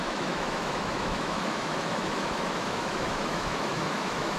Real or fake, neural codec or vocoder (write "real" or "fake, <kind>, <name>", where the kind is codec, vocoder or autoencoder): fake, autoencoder, DAC-VAE